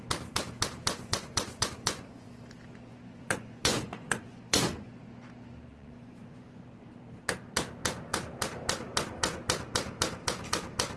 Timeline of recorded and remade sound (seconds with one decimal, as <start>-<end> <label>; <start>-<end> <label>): 0.0-0.9 recorded; 0.9-2.4 remade; 2.4-2.9 recorded; 2.9-4.9 remade; 4.9-5.7 recorded; 5.7-6.9 remade; 6.9-11.0 recorded